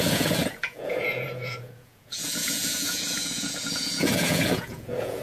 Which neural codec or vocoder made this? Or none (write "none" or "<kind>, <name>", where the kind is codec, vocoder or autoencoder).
vocoder, Vocos